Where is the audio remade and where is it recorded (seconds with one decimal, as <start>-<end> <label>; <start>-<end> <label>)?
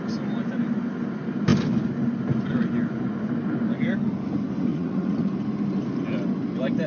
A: 0.0-4.7 recorded; 4.7-5.3 remade; 5.3-6.9 recorded